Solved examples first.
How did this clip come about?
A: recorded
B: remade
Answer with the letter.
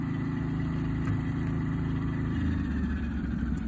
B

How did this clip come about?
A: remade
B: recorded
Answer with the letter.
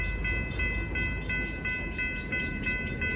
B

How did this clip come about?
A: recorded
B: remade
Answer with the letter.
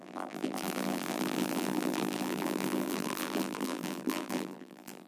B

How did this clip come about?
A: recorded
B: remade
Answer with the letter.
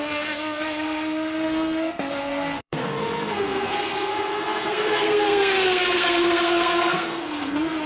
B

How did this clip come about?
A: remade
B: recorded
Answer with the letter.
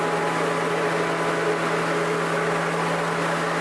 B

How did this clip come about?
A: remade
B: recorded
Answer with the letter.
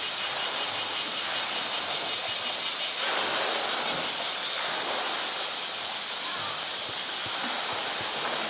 B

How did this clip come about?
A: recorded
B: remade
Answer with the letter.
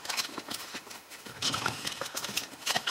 B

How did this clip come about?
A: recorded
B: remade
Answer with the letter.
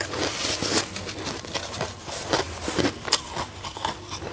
A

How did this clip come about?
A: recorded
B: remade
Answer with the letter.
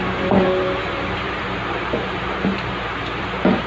B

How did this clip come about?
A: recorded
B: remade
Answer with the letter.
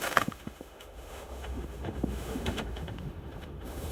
B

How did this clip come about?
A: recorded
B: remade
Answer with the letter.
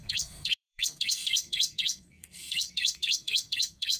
B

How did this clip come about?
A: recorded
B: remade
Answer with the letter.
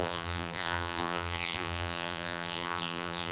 B